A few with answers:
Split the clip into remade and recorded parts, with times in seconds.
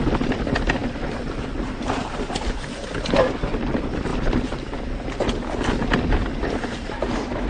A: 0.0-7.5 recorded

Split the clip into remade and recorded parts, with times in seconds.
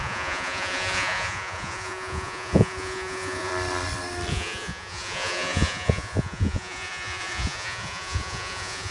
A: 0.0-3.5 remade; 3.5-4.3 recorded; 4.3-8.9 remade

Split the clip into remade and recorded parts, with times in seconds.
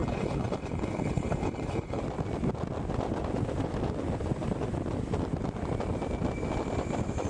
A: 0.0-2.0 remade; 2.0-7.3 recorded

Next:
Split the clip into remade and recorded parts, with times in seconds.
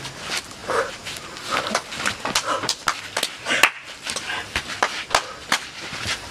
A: 0.0-6.3 recorded